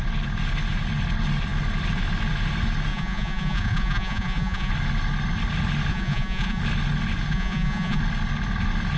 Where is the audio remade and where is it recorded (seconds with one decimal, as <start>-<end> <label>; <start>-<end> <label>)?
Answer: 0.0-2.9 recorded; 2.9-4.7 remade; 4.7-5.9 recorded; 5.9-6.6 remade; 6.6-7.3 recorded; 7.3-8.0 remade; 8.0-9.0 recorded